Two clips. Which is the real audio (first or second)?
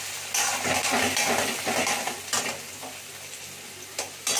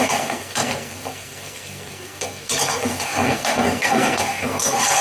first